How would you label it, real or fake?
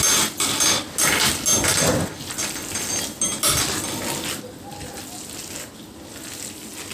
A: real